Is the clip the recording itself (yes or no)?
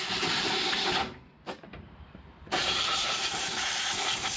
no